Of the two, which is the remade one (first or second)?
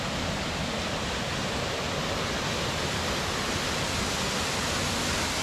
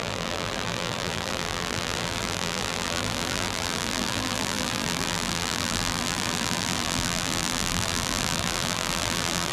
second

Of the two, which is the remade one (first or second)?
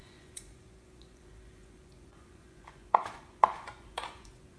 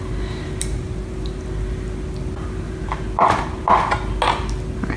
first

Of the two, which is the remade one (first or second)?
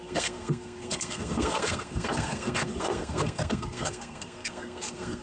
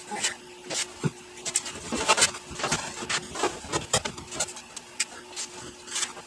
first